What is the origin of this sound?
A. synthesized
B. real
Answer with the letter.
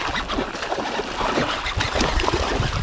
B